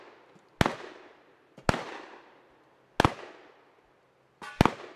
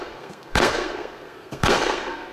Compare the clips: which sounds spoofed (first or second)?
second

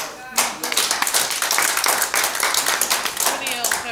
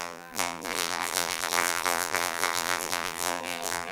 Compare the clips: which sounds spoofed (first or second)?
second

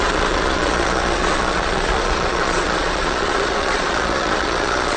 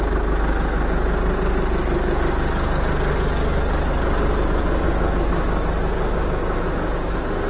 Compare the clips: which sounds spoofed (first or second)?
first